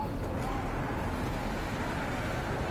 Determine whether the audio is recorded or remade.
recorded